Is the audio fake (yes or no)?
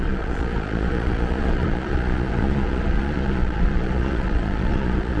yes